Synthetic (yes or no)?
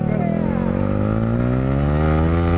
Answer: no